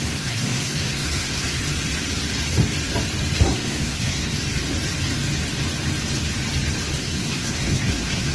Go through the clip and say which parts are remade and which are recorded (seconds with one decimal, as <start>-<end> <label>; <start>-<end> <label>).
0.0-1.6 remade; 1.6-3.4 recorded; 3.4-4.3 remade; 4.3-7.0 recorded; 7.0-8.3 remade